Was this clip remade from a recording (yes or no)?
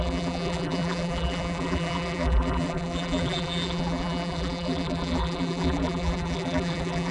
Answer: yes